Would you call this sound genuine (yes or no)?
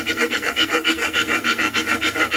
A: no